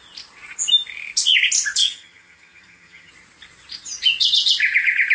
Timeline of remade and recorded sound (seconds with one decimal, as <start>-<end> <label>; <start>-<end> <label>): 0.0-1.8 recorded; 1.8-3.1 remade; 3.1-5.1 recorded